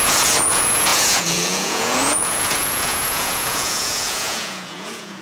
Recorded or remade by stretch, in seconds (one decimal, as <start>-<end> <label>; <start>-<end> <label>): 0.0-5.2 remade